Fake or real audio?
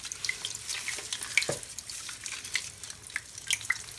real